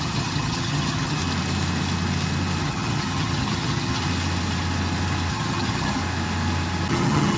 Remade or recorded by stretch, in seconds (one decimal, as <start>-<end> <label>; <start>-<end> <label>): 0.0-1.2 remade; 1.2-2.6 recorded; 2.6-4.0 remade; 4.0-5.3 recorded; 5.3-6.0 remade; 6.0-6.9 recorded; 6.9-7.4 remade